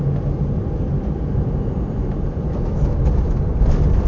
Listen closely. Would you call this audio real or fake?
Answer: real